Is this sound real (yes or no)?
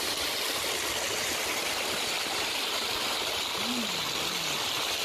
yes